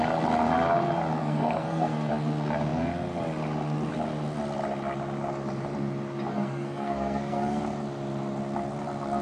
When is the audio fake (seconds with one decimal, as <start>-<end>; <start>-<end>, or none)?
1.2-2.1; 6.3-7.6